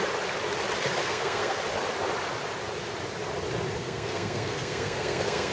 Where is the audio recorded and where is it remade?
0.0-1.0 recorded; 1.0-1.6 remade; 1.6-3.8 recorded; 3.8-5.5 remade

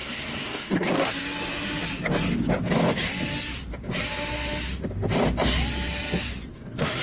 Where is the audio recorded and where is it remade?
0.0-1.1 remade; 1.1-6.5 recorded; 6.5-7.0 remade